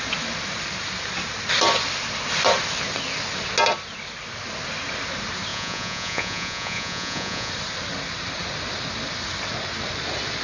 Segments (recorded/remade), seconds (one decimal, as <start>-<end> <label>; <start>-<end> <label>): 0.0-5.5 recorded; 5.5-7.5 remade; 7.5-10.4 recorded